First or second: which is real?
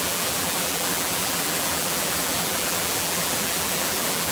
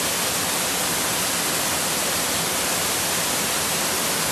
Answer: second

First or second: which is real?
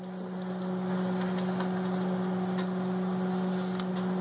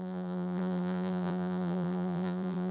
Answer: first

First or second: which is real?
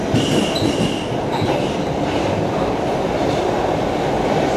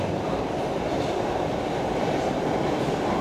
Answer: first